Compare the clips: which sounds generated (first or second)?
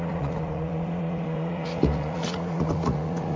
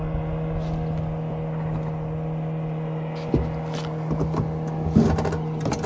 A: first